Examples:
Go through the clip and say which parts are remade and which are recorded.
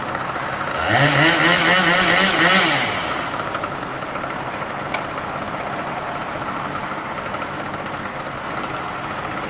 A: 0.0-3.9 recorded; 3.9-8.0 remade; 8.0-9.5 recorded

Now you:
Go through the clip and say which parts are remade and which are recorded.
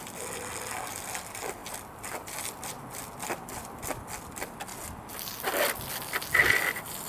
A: 0.0-1.6 recorded; 1.6-4.0 remade; 4.0-7.1 recorded